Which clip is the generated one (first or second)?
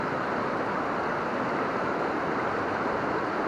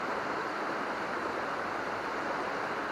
second